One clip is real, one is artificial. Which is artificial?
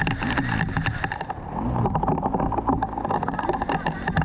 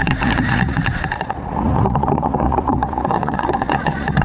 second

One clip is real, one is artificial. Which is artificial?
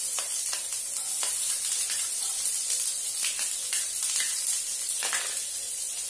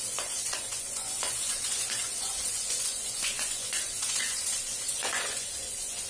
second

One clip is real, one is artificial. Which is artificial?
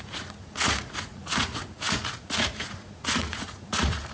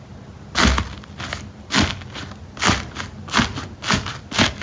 first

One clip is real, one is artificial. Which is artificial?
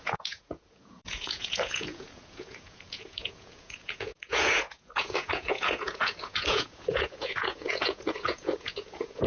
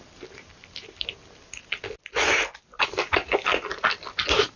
first